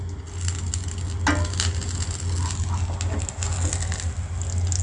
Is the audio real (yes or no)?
yes